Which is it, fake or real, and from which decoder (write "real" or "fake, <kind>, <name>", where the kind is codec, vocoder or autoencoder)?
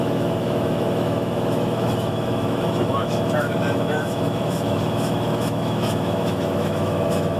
fake, autoencoder, DAC-VAE